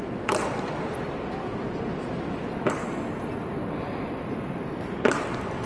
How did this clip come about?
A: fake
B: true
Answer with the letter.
B